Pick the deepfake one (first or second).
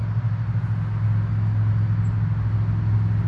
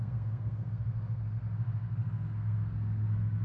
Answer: second